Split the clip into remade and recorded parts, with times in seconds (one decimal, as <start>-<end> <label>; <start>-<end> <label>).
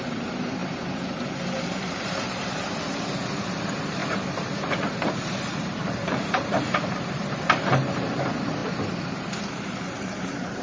0.0-10.6 remade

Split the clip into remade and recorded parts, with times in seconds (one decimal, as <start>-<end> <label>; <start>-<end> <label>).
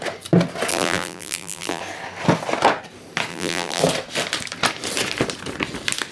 0.0-0.7 recorded; 0.7-1.8 remade; 1.8-3.3 recorded; 3.3-3.8 remade; 3.8-6.1 recorded